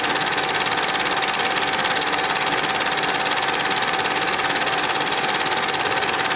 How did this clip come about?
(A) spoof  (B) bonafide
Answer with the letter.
B